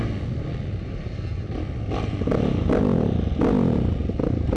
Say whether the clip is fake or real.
real